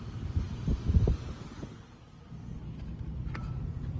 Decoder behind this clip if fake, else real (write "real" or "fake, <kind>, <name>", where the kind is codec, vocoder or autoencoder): real